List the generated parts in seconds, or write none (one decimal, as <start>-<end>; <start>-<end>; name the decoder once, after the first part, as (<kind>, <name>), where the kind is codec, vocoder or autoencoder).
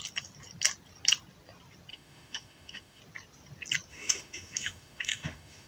1.9-3.0 (autoencoder, DAC-VAE); 3.9-5.7